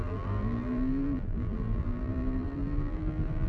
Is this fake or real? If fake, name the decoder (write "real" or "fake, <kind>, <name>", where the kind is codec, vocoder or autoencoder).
fake, vocoder, BigVGAN v2